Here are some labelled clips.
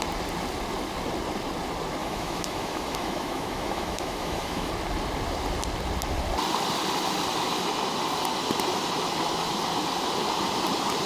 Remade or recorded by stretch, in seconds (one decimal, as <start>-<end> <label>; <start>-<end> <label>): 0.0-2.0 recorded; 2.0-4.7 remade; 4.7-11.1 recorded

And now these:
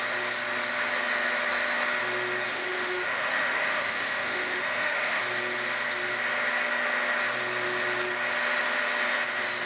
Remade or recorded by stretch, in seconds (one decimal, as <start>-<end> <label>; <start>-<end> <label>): 0.0-2.5 recorded; 2.5-5.2 remade; 5.2-9.7 recorded

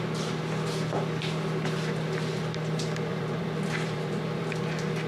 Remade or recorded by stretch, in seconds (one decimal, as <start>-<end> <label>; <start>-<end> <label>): 0.0-3.1 recorded; 3.1-4.4 remade; 4.4-5.1 recorded

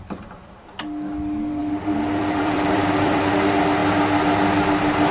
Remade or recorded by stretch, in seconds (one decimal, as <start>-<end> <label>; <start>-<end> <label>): 0.0-1.6 recorded; 1.6-3.3 remade; 3.3-5.1 recorded

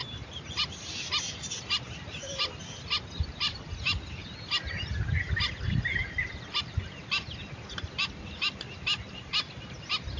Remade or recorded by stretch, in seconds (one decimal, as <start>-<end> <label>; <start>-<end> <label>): 0.0-1.7 recorded; 1.7-10.2 remade

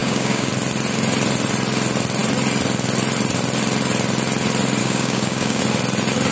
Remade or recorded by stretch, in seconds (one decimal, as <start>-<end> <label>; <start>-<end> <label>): 0.0-0.5 remade; 0.5-4.8 recorded; 4.8-5.6 remade; 5.6-6.3 recorded

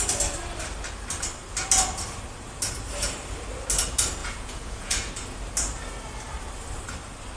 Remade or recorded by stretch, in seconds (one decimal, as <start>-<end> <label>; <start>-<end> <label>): 0.0-4.2 recorded; 4.2-5.1 remade; 5.1-7.4 recorded

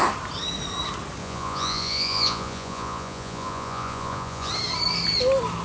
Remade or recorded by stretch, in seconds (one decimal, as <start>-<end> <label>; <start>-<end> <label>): 0.0-1.2 recorded; 1.2-4.5 remade; 4.5-5.6 recorded